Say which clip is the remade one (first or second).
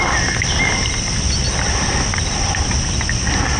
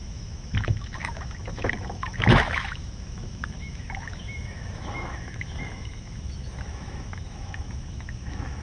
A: second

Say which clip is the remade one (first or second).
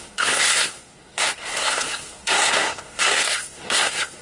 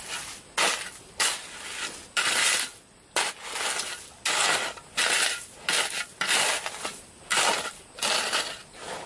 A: first